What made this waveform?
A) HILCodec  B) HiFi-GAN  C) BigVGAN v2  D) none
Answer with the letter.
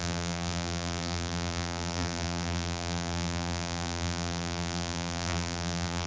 C